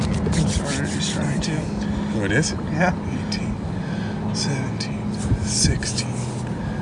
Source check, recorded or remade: recorded